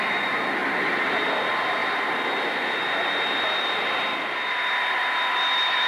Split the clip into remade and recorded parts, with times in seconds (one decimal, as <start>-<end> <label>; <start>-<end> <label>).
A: 0.0-1.8 recorded; 1.8-3.8 remade; 3.8-5.9 recorded